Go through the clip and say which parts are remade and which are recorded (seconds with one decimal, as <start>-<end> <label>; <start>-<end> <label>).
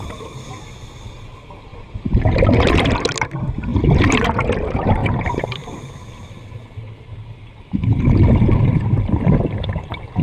0.0-1.7 recorded; 1.7-2.4 remade; 2.4-5.0 recorded; 5.0-5.8 remade; 5.8-10.2 recorded